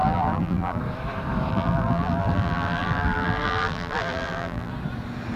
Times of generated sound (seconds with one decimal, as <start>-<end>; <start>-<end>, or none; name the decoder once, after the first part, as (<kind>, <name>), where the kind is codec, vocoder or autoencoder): 0.0-0.8 (vocoder, BigVGAN v2); 1.5-4.7